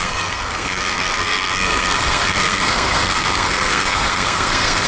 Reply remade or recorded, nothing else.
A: remade